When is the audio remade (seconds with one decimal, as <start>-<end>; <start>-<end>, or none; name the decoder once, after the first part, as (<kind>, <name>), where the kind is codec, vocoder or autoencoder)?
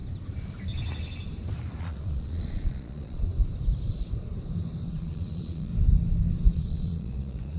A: 1.8-3.3 (vocoder, Vocos); 4.9-5.7; 6.5-7.6